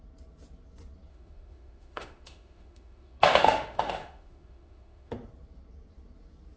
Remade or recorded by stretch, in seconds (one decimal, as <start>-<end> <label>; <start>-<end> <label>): 0.0-1.1 recorded; 1.1-5.1 remade; 5.1-6.6 recorded